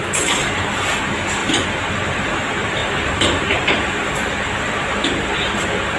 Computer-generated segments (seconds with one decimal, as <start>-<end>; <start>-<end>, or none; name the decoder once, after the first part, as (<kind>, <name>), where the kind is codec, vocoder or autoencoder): 0.0-1.4 (vocoder, BigVGAN v2); 1.9-6.0